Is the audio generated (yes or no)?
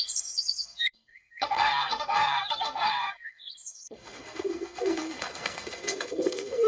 yes